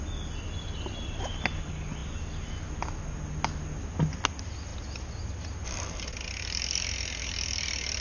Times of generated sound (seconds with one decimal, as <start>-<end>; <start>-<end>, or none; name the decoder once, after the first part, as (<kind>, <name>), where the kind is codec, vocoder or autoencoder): none